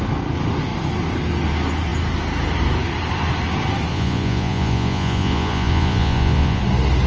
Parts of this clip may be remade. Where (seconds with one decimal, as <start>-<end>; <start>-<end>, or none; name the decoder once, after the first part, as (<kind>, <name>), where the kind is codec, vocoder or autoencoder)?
3.9-6.6 (vocoder, Vocos)